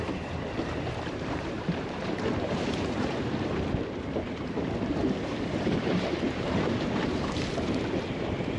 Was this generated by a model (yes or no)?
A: yes